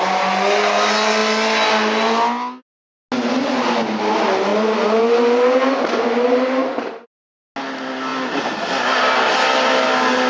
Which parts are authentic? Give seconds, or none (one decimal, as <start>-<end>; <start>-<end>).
0.0-10.3